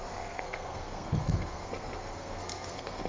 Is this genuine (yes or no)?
no